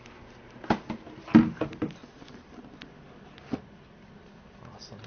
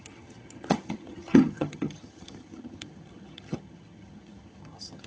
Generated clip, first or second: second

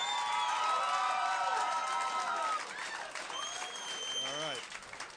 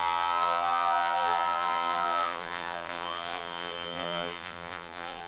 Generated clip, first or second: second